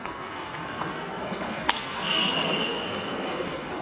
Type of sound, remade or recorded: remade